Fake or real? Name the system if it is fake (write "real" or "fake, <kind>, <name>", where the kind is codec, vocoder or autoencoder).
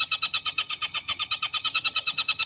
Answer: fake, vocoder, HiFi-GAN